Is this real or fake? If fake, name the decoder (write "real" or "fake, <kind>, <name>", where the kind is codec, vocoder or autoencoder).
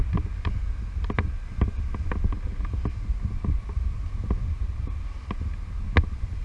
real